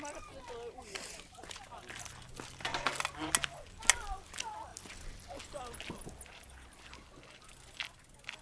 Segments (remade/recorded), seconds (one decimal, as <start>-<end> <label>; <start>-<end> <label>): 0.0-8.4 recorded